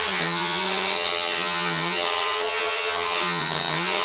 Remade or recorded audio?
remade